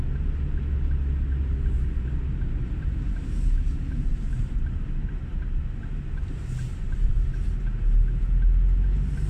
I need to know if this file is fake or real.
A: real